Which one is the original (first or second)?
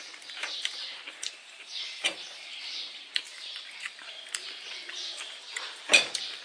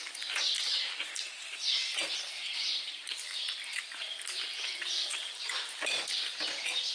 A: second